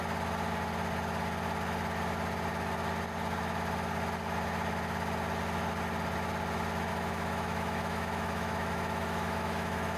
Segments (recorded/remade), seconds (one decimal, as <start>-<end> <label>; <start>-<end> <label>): 0.0-6.9 recorded; 6.9-10.0 remade